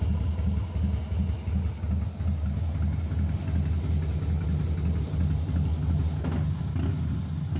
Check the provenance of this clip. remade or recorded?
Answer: recorded